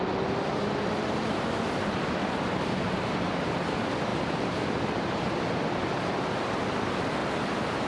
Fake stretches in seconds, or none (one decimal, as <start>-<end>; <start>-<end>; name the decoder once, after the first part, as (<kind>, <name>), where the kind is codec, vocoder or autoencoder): 4.1-5.5 (vocoder, BigVGAN v2)